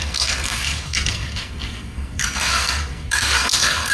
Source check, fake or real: fake